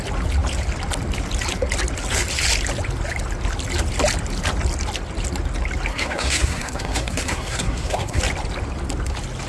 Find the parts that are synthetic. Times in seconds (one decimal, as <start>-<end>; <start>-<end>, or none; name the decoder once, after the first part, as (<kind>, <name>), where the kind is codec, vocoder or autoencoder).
5.9-8.2 (codec, SNAC)